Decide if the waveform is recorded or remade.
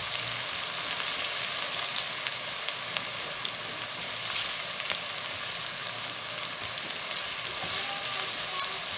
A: recorded